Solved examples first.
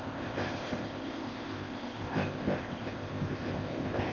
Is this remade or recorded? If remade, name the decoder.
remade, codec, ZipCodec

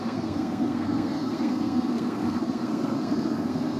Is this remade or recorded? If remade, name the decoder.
remade, codec, SNAC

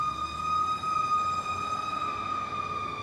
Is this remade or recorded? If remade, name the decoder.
recorded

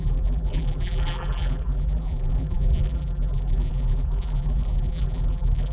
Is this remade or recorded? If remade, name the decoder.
remade, vocoder, BigVGAN v2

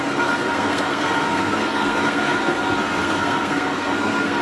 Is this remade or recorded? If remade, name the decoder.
remade, codec, SNAC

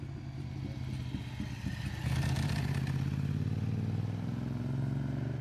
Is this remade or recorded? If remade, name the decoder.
recorded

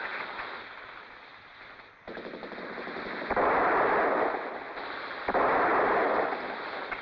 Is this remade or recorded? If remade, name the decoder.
recorded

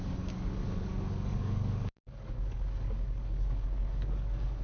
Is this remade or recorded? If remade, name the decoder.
remade, codec, DAC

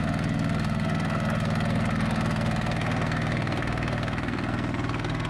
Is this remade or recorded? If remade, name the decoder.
remade, codec, SNAC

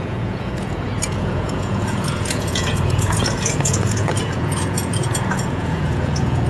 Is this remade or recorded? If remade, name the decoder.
remade, vocoder, Vocos